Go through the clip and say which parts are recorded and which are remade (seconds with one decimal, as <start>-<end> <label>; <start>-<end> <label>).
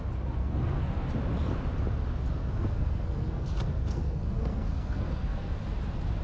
0.0-0.4 recorded; 0.4-1.0 remade; 1.0-2.4 recorded; 2.4-5.6 remade; 5.6-6.2 recorded